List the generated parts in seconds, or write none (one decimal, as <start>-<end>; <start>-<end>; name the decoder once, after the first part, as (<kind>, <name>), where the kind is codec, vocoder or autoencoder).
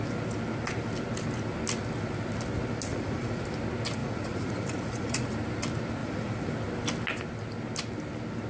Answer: 2.9-3.4 (vocoder, Vocos); 4.0-5.3; 6.0-6.5